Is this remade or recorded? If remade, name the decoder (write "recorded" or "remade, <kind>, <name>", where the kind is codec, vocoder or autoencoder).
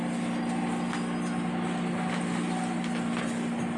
recorded